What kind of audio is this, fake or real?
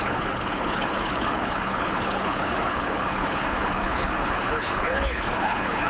fake